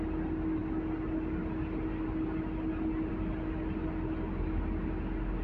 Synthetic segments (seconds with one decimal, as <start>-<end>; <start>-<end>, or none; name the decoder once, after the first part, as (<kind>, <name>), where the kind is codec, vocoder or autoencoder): none